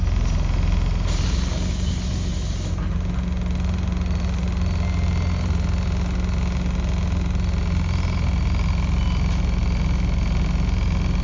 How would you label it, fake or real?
real